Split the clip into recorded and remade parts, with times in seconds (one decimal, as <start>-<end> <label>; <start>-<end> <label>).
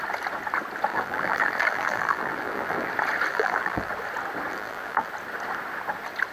0.0-0.9 recorded; 0.9-2.9 remade; 2.9-3.3 recorded; 3.3-3.9 remade; 3.9-4.5 recorded; 4.5-5.1 remade; 5.1-6.3 recorded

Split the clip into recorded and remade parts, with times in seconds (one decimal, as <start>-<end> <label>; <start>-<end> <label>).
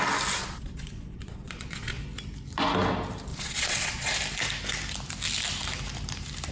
0.0-0.4 recorded; 0.4-2.0 remade; 2.0-3.3 recorded; 3.3-4.1 remade; 4.1-6.5 recorded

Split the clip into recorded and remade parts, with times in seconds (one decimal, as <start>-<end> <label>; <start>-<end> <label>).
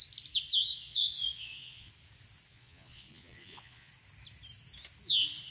0.0-0.7 recorded; 0.7-1.9 remade; 1.9-2.5 recorded; 2.5-3.9 remade; 3.9-5.5 recorded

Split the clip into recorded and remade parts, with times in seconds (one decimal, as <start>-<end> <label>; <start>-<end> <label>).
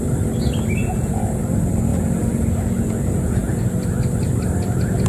0.0-0.8 recorded; 0.8-1.4 remade; 1.4-1.9 recorded; 1.9-3.6 remade; 3.6-5.1 recorded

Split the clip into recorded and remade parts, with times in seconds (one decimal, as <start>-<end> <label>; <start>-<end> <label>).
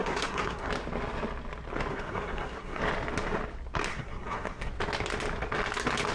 0.0-0.7 remade; 0.7-1.9 recorded; 1.9-2.8 remade; 2.8-3.9 recorded; 3.9-4.7 remade; 4.7-6.1 recorded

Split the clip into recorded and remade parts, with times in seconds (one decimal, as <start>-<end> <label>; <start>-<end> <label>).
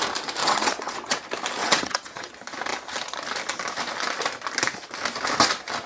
0.0-0.4 recorded; 0.4-1.2 remade; 1.2-1.6 recorded; 1.6-2.3 remade; 2.3-5.9 recorded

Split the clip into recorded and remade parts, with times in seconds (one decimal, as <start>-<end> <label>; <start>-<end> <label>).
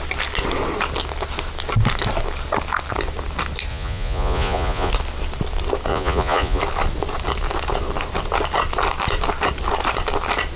0.0-3.7 recorded; 3.7-4.9 remade; 4.9-5.9 recorded; 5.9-6.6 remade; 6.6-10.6 recorded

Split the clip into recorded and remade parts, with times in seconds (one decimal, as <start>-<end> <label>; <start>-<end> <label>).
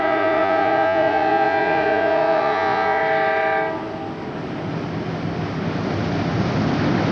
0.0-3.0 remade; 3.0-7.1 recorded